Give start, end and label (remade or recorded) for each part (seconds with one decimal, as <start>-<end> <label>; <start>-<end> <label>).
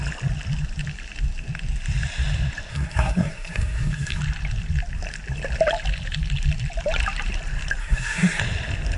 0.0-2.7 recorded; 2.7-4.2 remade; 4.2-7.8 recorded; 7.8-8.4 remade; 8.4-9.0 recorded